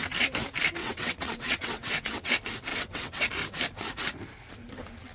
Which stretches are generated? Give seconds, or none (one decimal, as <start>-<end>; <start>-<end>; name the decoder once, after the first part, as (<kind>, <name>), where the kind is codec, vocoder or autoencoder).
0.8-2.3 (vocoder, WaveNeXt); 2.7-3.3